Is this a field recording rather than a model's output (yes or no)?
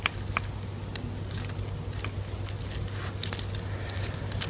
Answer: yes